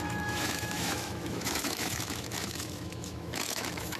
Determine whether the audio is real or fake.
fake